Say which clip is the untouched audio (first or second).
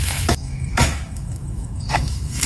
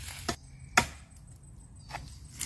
second